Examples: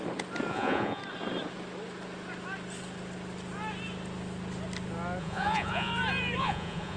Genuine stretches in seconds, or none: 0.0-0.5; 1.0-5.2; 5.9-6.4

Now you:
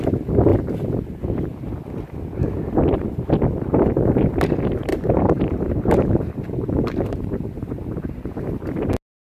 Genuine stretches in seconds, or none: 0.0-4.9; 8.3-9.3

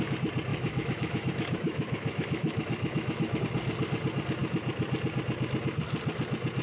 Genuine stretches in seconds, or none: 0.0-0.5; 3.4-6.6

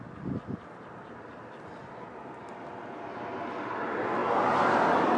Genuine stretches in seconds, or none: 1.3-3.6; 4.2-4.8

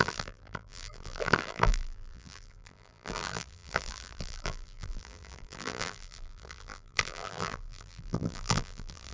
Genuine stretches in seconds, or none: none